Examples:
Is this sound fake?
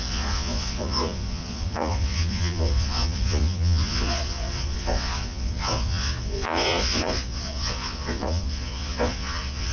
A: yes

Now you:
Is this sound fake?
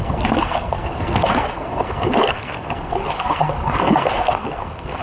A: yes